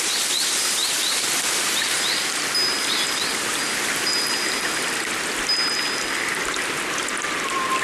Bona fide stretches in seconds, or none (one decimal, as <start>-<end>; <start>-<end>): 0.0-0.8; 2.1-7.8